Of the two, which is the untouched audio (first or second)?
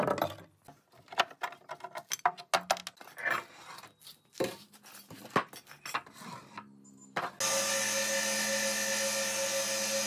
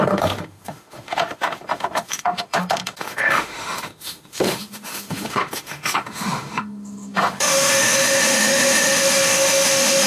first